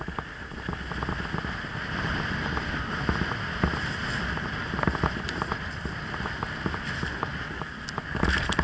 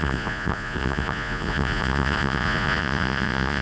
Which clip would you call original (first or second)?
first